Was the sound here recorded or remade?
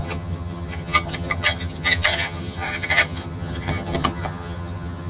remade